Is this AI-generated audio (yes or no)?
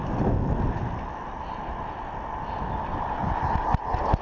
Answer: no